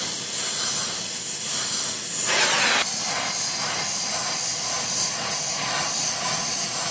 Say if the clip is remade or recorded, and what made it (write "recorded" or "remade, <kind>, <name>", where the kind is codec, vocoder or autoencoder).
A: recorded